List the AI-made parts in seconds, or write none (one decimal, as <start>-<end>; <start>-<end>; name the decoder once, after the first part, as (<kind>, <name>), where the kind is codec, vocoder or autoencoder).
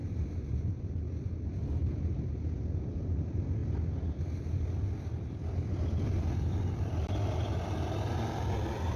none